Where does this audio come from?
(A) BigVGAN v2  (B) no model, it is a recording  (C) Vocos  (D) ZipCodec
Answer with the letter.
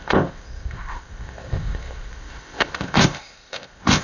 D